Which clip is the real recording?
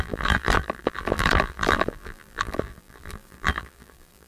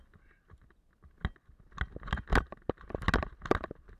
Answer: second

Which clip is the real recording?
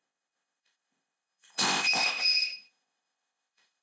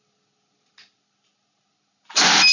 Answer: second